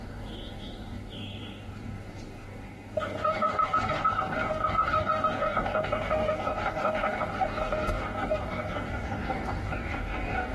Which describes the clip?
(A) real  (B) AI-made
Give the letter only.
B